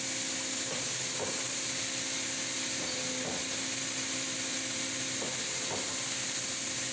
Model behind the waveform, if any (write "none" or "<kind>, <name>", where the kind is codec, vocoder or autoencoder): none